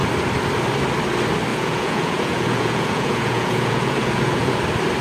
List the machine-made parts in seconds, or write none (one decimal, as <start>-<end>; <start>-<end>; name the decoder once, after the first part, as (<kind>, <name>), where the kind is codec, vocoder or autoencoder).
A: 1.5-4.5 (vocoder, Vocos)